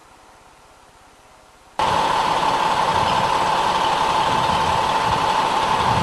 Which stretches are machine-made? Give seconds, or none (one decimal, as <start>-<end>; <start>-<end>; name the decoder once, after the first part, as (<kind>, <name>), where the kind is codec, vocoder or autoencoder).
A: none